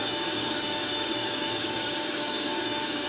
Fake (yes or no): yes